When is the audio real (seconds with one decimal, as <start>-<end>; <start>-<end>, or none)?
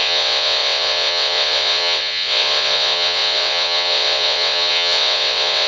none